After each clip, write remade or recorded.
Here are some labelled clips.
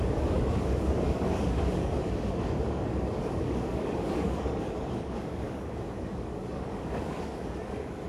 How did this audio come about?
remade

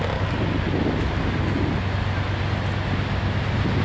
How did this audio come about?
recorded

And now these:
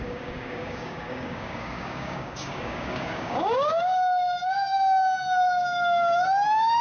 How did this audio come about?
remade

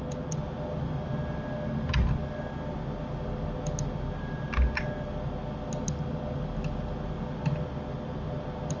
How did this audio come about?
recorded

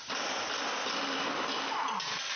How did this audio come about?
recorded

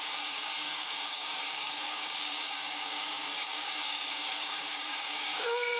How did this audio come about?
remade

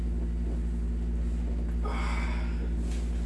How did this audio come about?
recorded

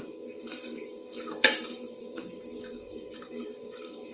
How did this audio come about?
remade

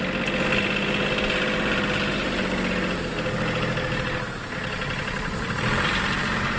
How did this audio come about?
recorded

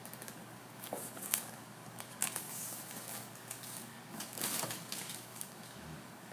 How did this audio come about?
remade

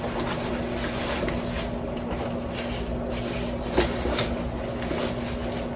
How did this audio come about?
recorded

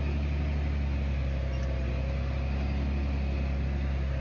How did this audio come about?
recorded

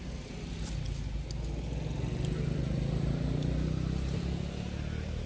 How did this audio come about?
recorded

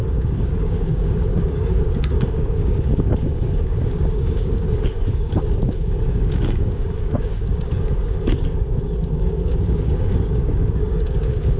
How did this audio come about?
remade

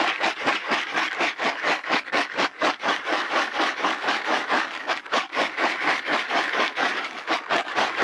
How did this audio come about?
remade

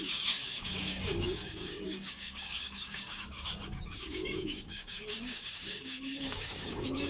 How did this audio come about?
remade